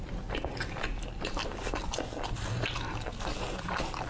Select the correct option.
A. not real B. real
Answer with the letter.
B